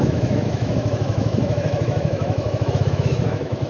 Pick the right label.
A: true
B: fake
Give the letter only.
B